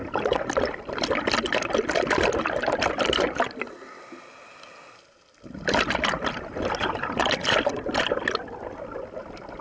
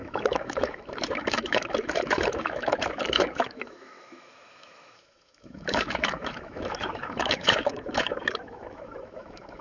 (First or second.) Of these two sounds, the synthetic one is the second